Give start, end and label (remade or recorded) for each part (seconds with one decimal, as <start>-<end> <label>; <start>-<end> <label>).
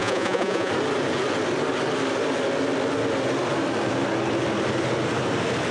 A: 0.0-0.7 remade; 0.7-5.7 recorded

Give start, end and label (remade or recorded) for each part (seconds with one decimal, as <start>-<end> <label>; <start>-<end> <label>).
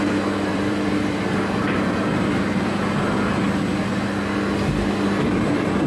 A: 0.0-0.5 recorded; 0.5-1.4 remade; 1.4-5.9 recorded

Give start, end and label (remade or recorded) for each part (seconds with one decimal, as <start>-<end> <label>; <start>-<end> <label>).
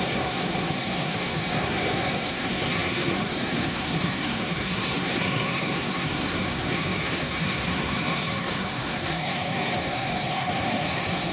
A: 0.0-11.3 remade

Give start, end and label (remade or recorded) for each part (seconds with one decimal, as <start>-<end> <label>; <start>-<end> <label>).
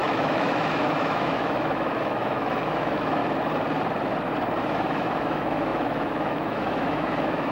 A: 0.0-3.2 remade; 3.2-4.6 recorded; 4.6-7.5 remade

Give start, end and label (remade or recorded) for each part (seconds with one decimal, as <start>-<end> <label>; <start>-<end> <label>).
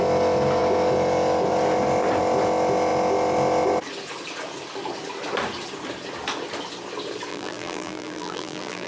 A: 0.0-7.3 recorded; 7.3-8.9 remade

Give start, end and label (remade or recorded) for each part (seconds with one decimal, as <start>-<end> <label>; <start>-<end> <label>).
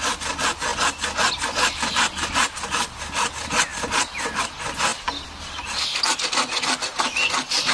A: 0.0-3.7 remade; 3.7-4.4 recorded; 4.4-7.7 remade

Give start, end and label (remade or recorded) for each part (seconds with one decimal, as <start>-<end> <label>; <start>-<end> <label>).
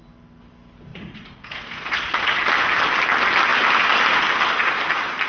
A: 0.0-0.9 recorded; 0.9-2.4 remade; 2.4-5.3 recorded